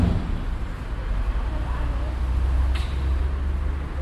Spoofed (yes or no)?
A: no